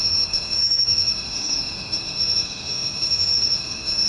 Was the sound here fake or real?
fake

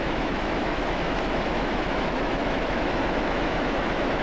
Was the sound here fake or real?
fake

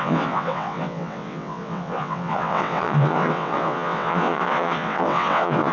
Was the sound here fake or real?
fake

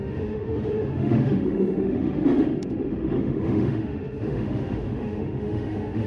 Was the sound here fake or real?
fake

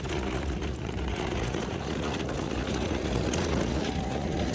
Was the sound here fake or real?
fake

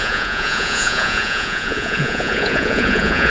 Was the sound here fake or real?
fake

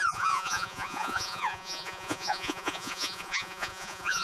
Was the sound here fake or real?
fake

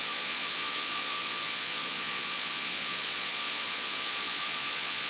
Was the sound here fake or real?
fake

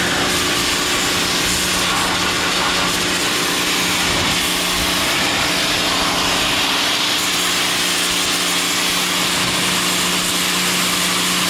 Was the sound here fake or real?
real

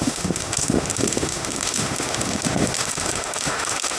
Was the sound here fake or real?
fake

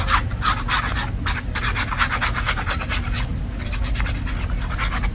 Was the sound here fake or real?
real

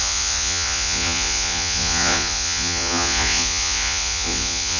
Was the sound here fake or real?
fake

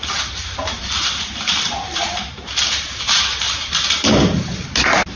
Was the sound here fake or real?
fake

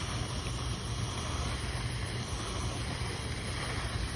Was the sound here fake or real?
fake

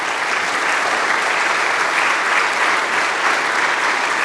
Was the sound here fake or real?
real